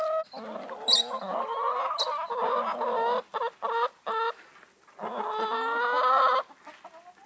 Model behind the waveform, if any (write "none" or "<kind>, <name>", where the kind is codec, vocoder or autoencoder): none